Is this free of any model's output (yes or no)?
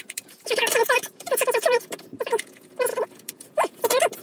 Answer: no